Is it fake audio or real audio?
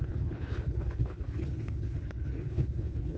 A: fake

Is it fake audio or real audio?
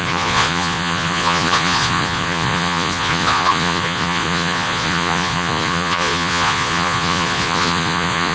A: fake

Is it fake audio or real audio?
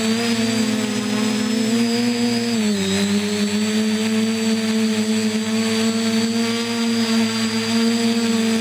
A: real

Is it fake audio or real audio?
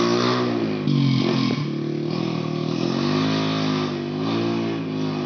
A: real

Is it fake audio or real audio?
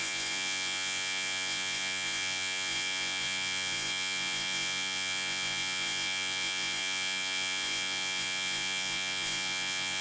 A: fake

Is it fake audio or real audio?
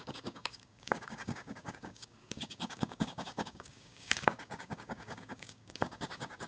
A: fake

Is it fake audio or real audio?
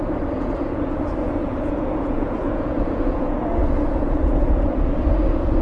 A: fake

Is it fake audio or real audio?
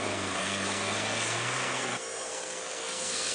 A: fake